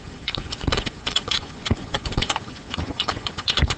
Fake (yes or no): yes